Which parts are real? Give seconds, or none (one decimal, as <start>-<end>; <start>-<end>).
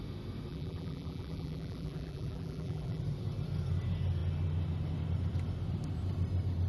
0.0-0.5; 3.0-6.7